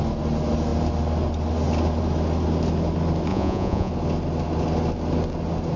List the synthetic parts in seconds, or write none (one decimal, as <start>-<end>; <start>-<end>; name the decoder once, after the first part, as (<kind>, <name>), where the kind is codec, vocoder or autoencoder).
3.3-3.9 (vocoder, Vocos)